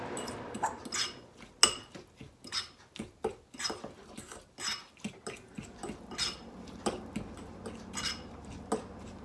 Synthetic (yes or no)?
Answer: no